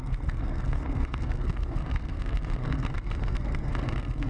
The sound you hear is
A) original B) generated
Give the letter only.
B